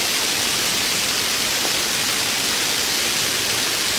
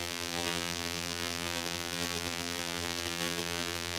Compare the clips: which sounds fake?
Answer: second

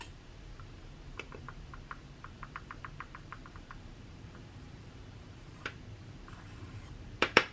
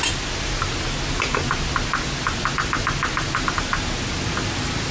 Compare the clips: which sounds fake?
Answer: first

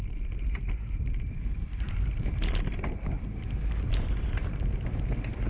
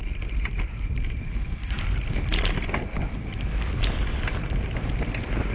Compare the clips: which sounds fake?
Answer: second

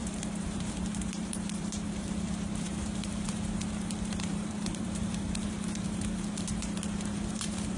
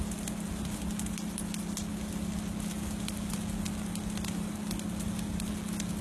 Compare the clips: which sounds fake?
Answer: first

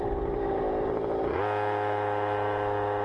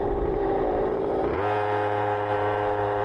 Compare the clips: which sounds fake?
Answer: second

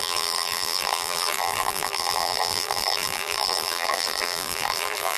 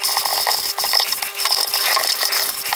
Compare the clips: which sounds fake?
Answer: first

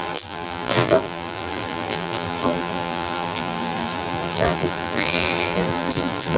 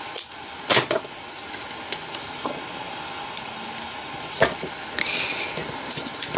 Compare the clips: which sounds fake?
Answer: first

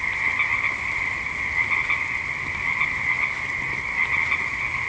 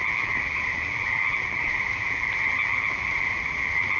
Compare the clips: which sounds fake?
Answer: second